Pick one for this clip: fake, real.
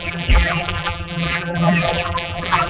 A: fake